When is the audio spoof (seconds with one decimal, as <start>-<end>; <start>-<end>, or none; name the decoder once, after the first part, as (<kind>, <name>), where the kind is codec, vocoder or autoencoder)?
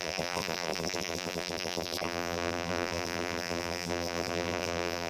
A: 0.0-5.1 (vocoder, BigVGAN v2)